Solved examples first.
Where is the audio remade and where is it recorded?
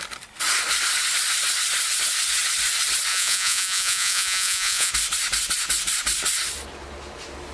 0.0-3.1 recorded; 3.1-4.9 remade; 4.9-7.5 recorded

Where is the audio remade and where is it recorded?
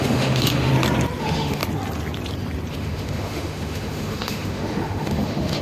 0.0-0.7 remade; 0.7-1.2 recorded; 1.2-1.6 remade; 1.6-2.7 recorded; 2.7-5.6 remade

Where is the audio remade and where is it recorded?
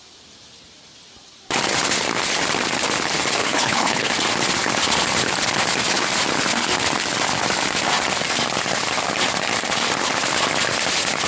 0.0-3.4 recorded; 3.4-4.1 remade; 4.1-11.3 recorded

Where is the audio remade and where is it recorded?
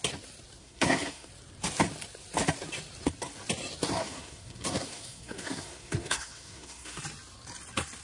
0.0-0.6 recorded; 0.6-1.3 remade; 1.3-4.0 recorded; 4.0-7.0 remade; 7.0-8.0 recorded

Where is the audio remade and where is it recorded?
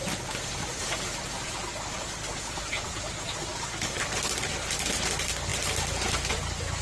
0.0-1.7 recorded; 1.7-2.3 remade; 2.3-3.5 recorded; 3.5-4.0 remade; 4.0-6.8 recorded